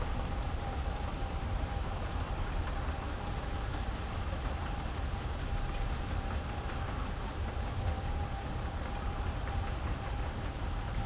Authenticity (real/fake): real